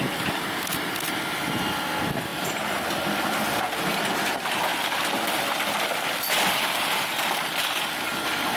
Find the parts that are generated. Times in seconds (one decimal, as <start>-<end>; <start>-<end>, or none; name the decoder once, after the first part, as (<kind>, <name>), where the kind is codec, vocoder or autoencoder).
none